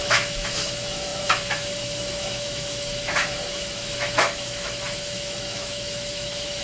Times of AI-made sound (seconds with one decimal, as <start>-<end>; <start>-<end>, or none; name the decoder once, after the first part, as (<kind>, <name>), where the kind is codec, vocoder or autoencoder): 0.0-6.6 (autoencoder, DAC-VAE)